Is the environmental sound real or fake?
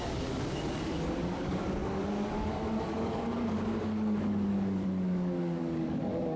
fake